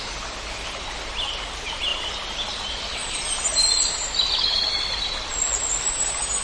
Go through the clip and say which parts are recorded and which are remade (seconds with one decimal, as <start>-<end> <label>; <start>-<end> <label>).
0.0-6.4 recorded